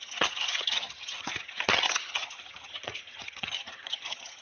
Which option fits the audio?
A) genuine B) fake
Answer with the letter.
B